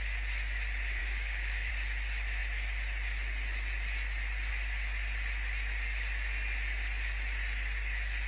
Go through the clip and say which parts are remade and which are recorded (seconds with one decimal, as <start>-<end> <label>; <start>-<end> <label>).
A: 0.0-1.0 recorded; 1.0-1.7 remade; 1.7-8.3 recorded